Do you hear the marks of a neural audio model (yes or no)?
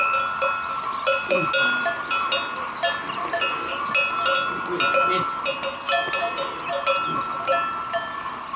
no